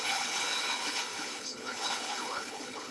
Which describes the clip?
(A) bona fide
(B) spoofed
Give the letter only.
B